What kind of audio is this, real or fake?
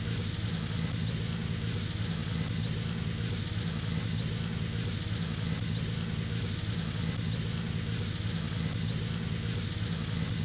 real